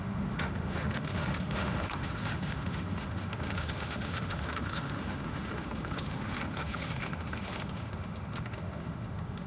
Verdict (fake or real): fake